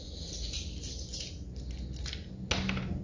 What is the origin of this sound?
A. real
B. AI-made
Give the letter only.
A